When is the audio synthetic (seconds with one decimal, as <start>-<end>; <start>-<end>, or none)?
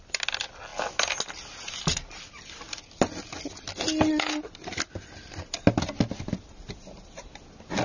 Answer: none